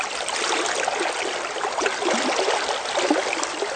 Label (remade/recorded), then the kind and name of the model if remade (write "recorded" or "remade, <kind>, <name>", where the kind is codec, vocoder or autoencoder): recorded